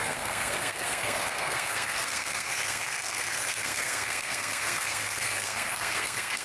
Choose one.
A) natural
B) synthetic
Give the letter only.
B